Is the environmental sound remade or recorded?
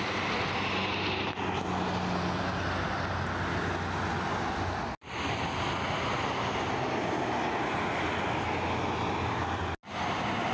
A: recorded